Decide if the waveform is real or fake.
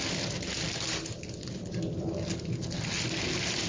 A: real